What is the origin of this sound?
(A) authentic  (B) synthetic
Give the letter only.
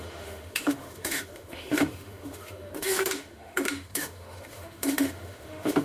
B